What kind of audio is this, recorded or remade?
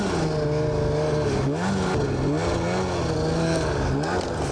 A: recorded